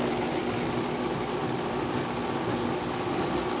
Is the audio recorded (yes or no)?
yes